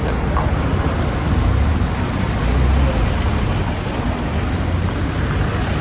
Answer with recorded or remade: recorded